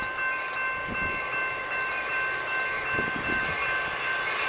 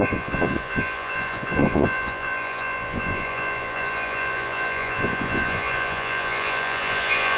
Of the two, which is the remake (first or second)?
second